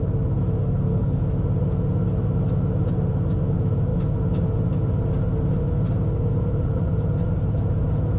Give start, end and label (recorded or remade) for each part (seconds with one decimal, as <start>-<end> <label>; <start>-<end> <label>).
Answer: 0.0-0.6 recorded; 0.6-1.2 remade; 1.2-8.2 recorded